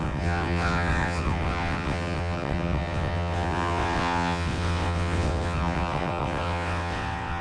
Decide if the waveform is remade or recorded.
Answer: remade